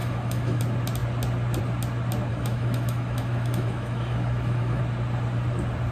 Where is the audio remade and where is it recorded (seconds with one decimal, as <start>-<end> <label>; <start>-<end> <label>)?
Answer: 0.0-0.6 remade; 0.6-2.3 recorded; 2.3-4.8 remade; 4.8-5.9 recorded